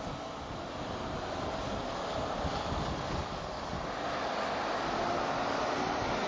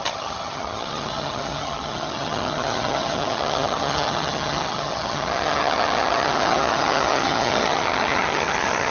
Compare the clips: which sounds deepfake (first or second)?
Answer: second